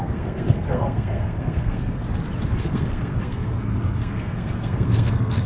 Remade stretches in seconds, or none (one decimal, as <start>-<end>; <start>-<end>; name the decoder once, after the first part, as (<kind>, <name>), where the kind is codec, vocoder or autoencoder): 0.0-2.0 (codec, SNAC); 2.6-5.5